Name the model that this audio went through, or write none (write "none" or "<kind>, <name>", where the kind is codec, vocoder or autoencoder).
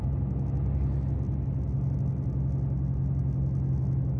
none